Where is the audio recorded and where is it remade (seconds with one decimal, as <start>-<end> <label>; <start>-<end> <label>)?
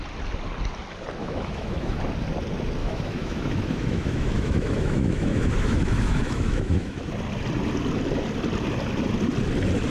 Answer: 0.0-1.2 recorded; 1.2-2.0 remade; 2.0-2.8 recorded; 2.8-7.1 remade; 7.1-9.9 recorded